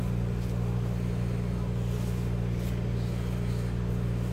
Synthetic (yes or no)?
no